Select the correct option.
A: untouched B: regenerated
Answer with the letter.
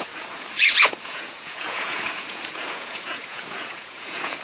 B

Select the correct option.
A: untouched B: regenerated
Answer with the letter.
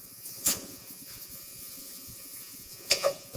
B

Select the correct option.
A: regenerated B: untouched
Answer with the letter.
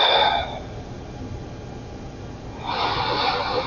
B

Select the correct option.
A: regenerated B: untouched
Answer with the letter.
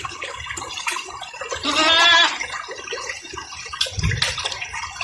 B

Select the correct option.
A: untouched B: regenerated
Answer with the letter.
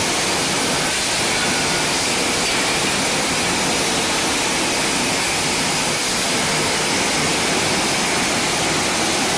A